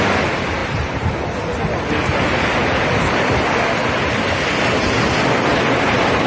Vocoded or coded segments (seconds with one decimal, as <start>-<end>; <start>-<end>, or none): none